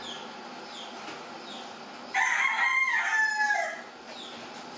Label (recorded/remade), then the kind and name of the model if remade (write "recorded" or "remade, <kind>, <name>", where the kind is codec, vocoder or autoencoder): recorded